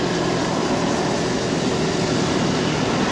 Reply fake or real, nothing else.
real